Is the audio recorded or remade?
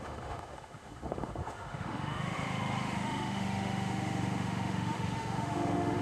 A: remade